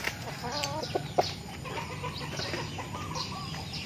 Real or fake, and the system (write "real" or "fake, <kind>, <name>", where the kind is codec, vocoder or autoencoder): real